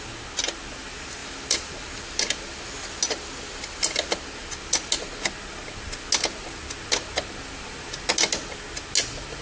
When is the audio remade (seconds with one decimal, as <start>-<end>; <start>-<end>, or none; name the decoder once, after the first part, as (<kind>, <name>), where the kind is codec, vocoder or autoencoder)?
1.2-1.9 (vocoder, BigVGAN v2)